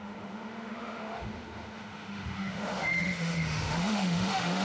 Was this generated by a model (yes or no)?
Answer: yes